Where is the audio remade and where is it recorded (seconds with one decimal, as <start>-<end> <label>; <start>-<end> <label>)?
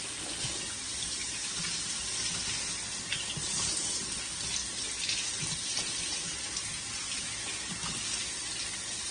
0.0-9.1 recorded